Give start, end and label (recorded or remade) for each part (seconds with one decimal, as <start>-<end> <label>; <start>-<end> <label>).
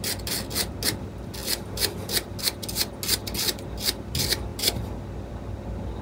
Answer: 0.0-6.0 recorded